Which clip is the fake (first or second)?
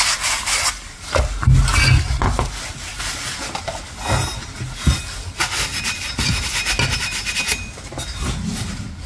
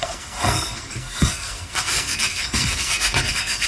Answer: second